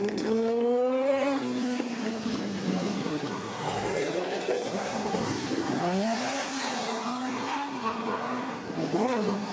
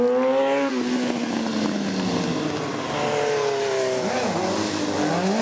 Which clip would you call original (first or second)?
second